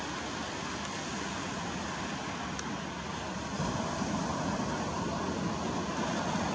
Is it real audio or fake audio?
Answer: real